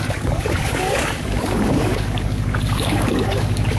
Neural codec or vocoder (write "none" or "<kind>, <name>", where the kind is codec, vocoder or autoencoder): codec, DAC